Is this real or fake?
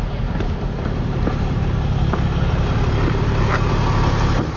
real